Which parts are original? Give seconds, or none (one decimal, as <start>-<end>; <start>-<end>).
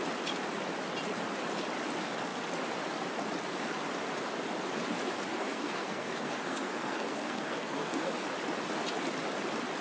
0.0-5.3; 8.1-9.8